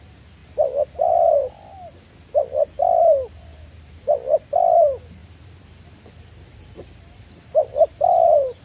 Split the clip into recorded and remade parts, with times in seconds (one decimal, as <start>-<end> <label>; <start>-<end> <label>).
0.0-0.4 recorded; 0.4-1.3 remade; 1.3-5.2 recorded; 5.2-8.6 remade